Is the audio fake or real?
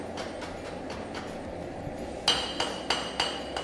real